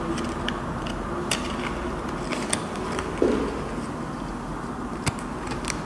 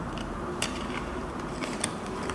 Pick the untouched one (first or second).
first